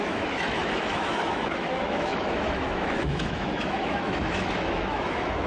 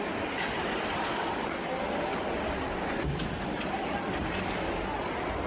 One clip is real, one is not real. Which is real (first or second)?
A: second